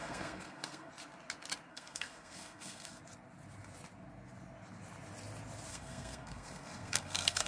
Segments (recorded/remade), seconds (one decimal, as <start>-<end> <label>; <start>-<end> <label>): 0.0-0.9 remade; 0.9-1.7 recorded; 1.7-3.0 remade; 3.0-5.7 recorded; 5.7-7.5 remade